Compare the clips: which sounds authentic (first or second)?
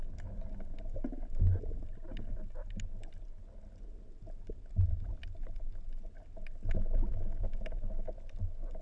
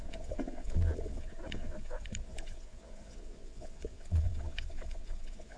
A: first